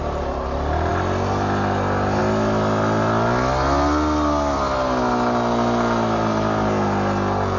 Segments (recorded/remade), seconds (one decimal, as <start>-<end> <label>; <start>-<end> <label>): 0.0-7.6 recorded